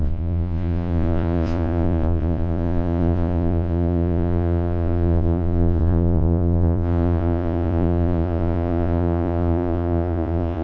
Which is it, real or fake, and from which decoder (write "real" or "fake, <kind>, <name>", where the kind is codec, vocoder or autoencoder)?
fake, vocoder, Vocos